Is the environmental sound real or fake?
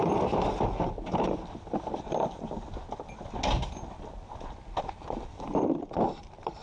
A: real